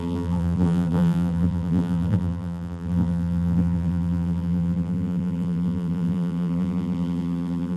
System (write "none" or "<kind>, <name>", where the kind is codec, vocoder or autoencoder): vocoder, BigVGAN v2